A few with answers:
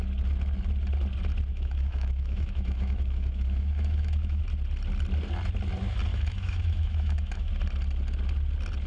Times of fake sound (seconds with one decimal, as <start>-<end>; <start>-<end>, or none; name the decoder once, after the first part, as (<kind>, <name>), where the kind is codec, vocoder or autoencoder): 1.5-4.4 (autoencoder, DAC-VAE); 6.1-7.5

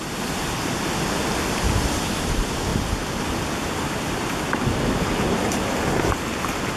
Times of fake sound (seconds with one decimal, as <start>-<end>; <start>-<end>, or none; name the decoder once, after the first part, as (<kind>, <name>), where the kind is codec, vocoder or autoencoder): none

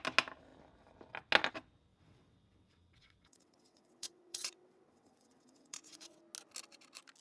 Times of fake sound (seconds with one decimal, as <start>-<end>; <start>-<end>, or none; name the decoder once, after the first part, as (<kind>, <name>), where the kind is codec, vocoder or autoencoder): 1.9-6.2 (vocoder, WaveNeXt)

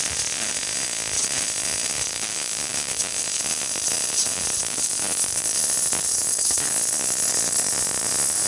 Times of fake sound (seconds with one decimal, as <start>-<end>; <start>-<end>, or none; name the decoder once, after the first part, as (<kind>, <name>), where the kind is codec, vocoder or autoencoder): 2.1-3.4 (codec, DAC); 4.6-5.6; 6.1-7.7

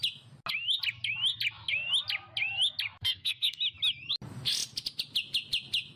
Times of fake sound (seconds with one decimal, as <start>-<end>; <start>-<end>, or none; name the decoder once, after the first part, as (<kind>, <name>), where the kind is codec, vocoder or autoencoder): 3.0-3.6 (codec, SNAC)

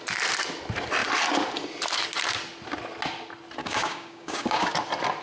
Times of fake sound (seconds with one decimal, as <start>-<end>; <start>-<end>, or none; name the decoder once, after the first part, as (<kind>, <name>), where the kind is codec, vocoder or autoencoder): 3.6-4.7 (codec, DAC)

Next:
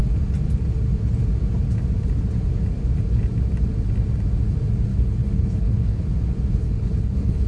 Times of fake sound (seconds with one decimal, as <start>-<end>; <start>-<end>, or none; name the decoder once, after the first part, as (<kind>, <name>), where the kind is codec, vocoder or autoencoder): 4.9-6.0 (codec, HILCodec); 6.6-7.5